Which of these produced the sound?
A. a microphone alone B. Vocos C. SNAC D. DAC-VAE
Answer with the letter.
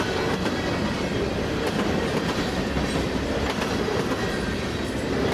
A